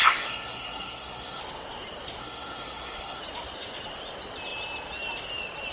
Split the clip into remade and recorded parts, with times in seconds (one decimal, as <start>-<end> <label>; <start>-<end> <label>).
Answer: 0.0-1.4 remade; 1.4-2.2 recorded; 2.2-3.2 remade; 3.2-5.7 recorded